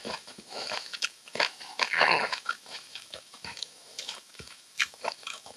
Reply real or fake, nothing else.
fake